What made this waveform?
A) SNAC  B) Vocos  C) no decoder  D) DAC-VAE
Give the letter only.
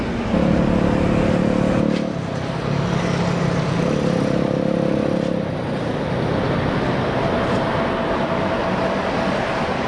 C